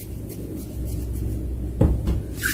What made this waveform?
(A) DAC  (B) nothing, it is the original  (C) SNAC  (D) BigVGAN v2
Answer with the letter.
B